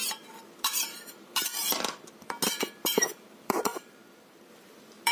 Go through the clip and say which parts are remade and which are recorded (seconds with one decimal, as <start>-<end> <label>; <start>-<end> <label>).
0.0-1.5 remade; 1.5-2.7 recorded; 2.7-5.1 remade